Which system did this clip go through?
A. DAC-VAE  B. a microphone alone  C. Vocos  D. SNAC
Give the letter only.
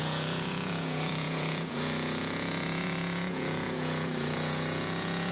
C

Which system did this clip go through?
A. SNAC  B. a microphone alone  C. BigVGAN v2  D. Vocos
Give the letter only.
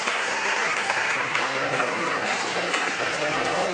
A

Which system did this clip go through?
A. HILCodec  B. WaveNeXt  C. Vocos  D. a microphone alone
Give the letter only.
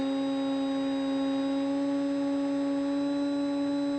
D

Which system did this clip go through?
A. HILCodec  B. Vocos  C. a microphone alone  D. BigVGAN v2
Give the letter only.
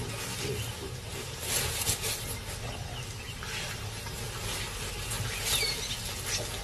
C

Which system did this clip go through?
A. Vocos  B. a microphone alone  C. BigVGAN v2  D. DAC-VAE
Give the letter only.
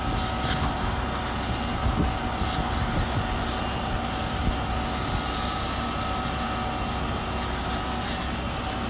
B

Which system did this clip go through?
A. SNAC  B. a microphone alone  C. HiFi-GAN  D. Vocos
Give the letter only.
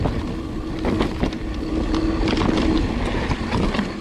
B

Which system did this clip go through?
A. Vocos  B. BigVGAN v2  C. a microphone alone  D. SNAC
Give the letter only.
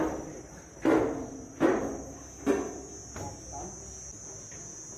C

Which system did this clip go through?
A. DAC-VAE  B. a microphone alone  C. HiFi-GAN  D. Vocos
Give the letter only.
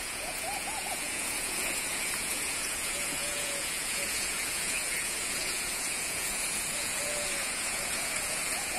D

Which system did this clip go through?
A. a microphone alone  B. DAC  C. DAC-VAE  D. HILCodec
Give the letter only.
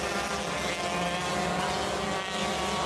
A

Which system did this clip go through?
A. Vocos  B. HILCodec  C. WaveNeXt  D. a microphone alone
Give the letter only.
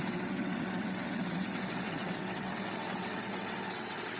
C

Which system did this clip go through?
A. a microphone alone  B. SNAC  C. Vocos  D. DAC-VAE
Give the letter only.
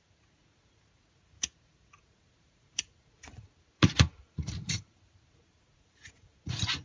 C